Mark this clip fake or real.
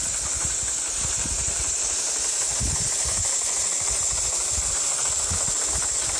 real